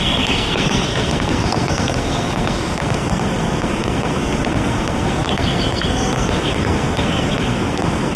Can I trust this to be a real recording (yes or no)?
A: no